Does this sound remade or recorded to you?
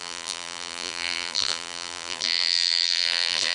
remade